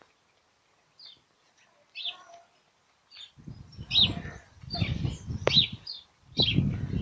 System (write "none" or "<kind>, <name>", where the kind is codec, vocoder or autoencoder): none